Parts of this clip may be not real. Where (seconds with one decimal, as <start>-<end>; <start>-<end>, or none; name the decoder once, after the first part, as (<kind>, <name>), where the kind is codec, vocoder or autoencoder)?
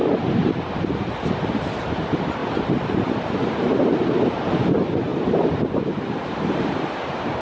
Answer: 1.6-2.4 (vocoder, BigVGAN v2); 3.0-7.4